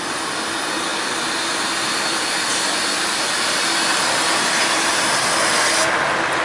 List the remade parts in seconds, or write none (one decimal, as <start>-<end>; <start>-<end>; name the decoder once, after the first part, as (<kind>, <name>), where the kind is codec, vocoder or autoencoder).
none